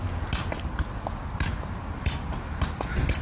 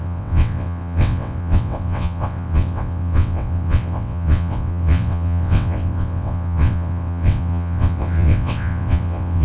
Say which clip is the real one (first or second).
first